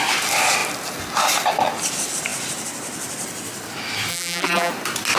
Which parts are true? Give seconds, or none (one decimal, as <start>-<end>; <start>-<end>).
0.0-4.1; 4.7-5.2